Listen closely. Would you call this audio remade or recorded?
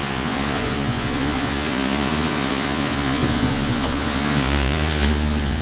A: remade